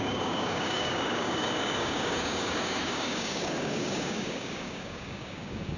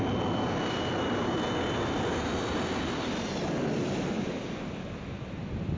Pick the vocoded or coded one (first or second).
first